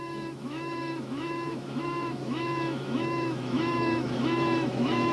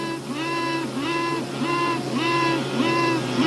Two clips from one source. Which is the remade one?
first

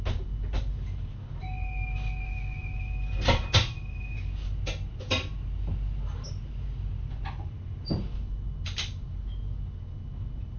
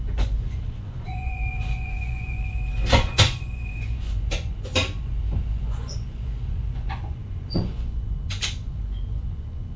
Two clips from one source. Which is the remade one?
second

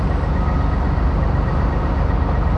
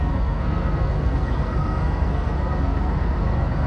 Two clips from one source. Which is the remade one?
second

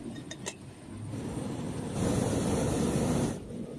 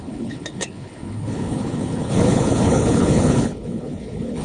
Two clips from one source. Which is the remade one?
second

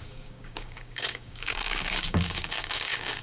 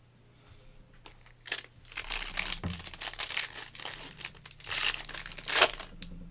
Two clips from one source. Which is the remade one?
first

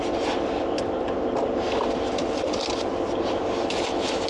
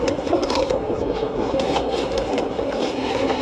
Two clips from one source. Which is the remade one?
second